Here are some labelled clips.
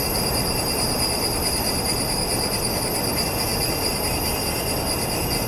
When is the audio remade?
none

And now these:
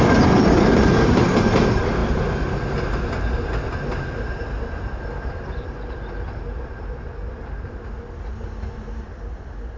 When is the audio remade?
none

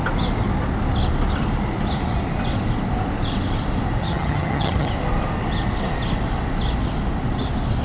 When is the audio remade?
4.0-4.9 (vocoder, HiFi-GAN)